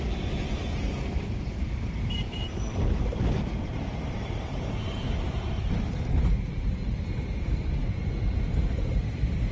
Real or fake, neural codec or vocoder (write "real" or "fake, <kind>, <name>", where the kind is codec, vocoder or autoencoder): fake, vocoder, BigVGAN v2